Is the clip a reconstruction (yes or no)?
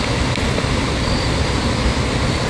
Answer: no